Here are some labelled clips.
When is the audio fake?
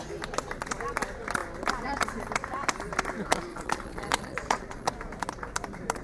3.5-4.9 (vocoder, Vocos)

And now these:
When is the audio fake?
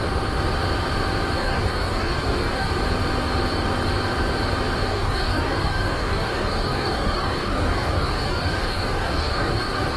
1.4-2.8 (codec, DAC); 4.9-10.0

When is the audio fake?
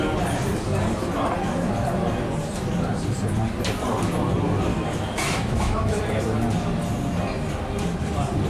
4.7-6.0 (autoencoder, DAC-VAE)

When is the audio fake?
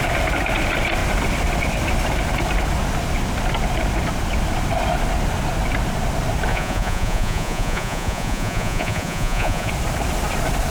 6.5-9.7 (vocoder, Vocos)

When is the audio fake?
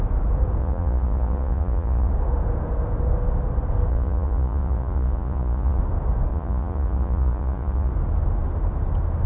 0.6-2.1 (vocoder, Vocos); 3.9-5.8; 6.3-7.9